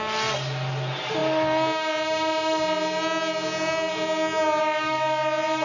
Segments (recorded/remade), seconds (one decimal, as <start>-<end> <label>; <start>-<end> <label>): 0.0-5.6 recorded